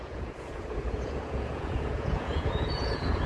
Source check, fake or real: fake